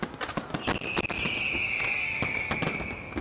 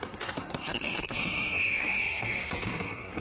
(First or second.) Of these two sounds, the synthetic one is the second